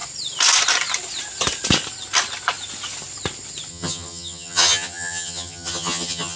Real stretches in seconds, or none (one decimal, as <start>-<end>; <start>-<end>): 0.0-3.7